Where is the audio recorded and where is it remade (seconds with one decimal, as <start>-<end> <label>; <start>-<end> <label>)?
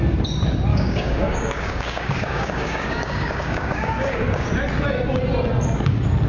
0.0-0.7 recorded; 0.7-4.5 remade; 4.5-6.3 recorded